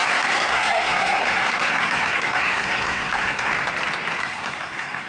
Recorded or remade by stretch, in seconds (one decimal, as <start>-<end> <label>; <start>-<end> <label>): 0.0-3.5 remade; 3.5-4.2 recorded; 4.2-5.1 remade